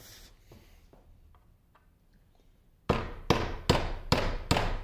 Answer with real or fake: real